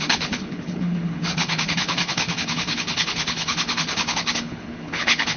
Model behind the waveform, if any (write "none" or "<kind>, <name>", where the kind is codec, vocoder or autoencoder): codec, HILCodec